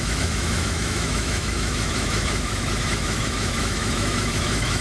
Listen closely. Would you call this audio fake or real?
fake